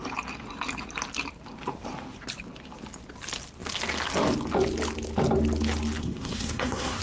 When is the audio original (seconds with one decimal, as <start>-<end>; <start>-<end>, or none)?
0.0-6.0